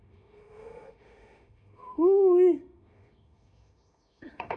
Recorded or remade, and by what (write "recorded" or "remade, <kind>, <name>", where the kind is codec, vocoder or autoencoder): remade, autoencoder, DAC-VAE